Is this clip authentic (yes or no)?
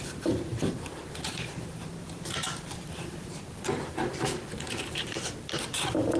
no